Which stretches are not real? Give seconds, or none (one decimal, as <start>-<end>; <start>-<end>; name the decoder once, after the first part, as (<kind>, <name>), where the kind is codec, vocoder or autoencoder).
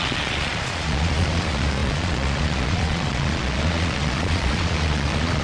0.0-5.4 (vocoder, Vocos)